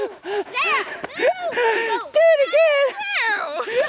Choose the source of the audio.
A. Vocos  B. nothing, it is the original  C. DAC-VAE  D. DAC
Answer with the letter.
B